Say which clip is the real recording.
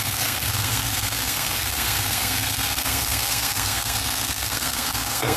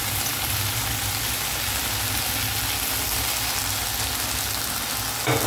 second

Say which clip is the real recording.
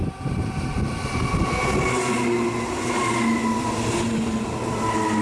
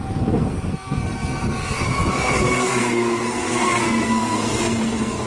first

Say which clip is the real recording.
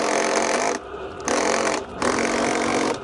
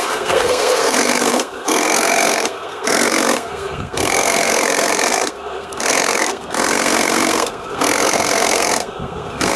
first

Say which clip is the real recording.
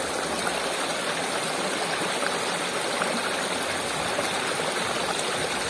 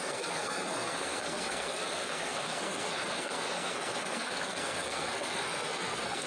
first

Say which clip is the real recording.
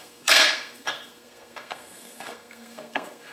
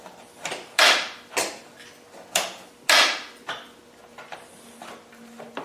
second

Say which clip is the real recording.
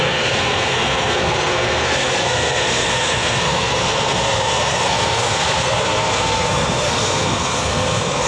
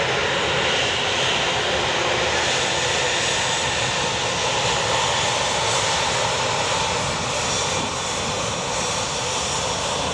second